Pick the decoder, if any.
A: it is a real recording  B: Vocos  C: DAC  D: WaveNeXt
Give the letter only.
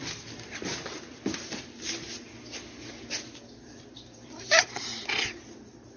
A